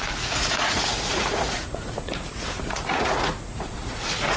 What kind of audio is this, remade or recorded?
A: remade